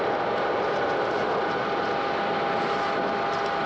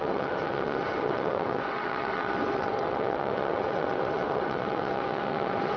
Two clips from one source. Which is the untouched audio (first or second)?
first